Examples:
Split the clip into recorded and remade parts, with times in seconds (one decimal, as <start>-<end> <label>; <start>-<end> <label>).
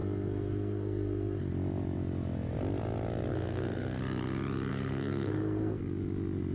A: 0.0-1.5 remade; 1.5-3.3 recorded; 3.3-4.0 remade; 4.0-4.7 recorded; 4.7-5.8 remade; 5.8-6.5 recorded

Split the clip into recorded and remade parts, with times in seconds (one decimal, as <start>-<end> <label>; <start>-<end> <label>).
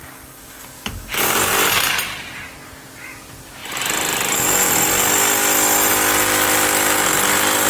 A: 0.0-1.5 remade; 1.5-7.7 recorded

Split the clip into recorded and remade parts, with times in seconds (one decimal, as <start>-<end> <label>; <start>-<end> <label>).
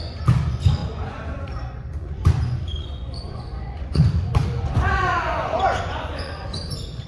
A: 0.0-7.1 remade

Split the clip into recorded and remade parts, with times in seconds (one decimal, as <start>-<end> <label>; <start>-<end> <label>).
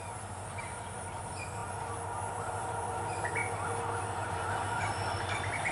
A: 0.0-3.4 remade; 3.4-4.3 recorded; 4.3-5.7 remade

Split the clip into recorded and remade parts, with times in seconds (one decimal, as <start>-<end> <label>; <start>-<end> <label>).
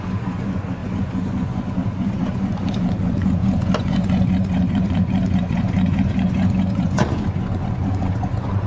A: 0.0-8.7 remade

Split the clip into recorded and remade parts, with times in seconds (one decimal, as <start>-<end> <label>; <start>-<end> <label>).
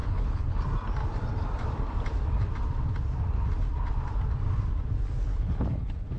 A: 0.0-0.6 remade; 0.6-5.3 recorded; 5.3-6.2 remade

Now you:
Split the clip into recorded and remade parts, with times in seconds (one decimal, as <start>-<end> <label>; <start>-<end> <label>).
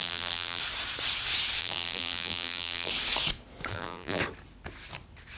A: 0.0-0.6 remade; 0.6-1.6 recorded; 1.6-2.9 remade; 2.9-3.7 recorded; 3.7-4.2 remade; 4.2-5.4 recorded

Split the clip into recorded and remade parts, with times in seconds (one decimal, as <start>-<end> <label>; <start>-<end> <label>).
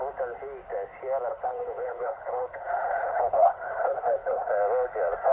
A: 0.0-1.3 recorded; 1.3-4.5 remade; 4.5-5.3 recorded